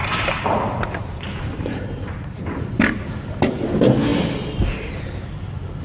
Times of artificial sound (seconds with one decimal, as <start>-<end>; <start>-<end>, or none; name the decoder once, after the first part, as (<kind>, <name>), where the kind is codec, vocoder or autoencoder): 0.0-2.6 (vocoder, BigVGAN v2)